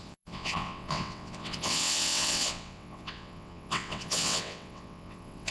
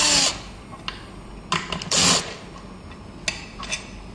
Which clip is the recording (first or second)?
second